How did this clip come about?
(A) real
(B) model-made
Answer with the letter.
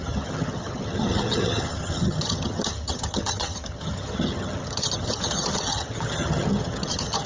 B